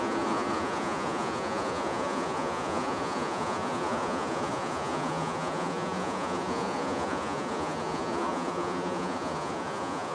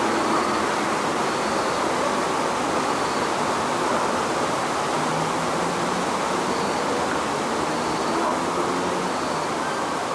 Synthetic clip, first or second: first